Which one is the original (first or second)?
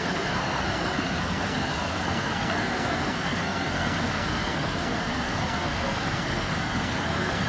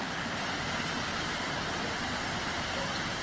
second